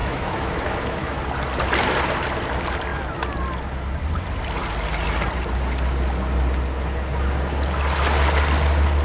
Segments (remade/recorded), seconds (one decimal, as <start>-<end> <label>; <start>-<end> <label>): 0.0-1.2 remade; 1.2-9.0 recorded